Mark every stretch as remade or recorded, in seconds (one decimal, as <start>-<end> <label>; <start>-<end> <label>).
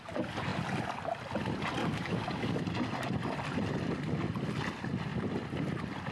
0.0-1.8 recorded; 1.8-2.6 remade; 2.6-6.1 recorded